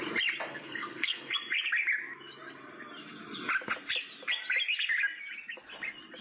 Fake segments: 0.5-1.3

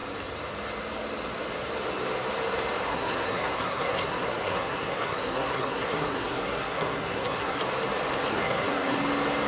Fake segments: 2.9-7.6; 8.3-9.0